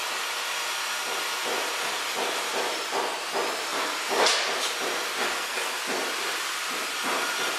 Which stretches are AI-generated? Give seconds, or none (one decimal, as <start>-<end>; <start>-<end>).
5.2-5.8